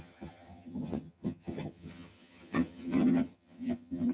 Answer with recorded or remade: remade